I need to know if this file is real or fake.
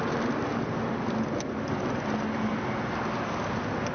real